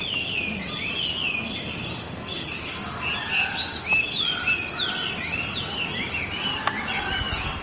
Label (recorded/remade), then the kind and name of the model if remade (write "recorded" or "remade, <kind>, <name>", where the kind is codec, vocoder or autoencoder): recorded